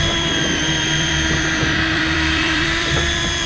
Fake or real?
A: fake